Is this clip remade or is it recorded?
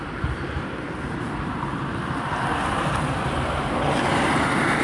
remade